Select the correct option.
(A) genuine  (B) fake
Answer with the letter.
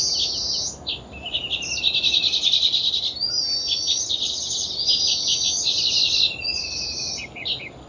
A